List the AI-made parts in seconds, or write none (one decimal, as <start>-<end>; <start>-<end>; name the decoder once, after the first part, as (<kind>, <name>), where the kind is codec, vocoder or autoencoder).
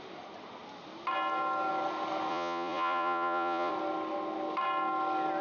2.3-3.7 (vocoder, Vocos)